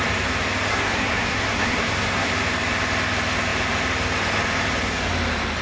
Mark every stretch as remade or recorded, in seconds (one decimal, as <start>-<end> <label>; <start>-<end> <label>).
0.0-0.7 recorded; 0.7-2.3 remade; 2.3-5.6 recorded